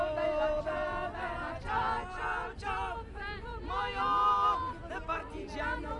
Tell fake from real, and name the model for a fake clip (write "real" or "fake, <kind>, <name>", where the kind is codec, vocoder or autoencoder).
real